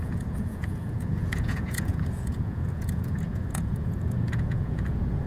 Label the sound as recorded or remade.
remade